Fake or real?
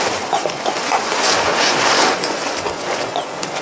fake